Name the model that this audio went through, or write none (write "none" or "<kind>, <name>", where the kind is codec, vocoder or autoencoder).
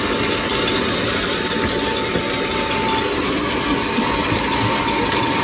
none